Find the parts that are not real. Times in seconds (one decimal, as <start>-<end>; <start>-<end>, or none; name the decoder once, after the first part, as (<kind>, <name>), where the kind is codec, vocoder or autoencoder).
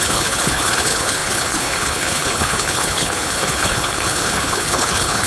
0.0-5.3 (codec, HILCodec)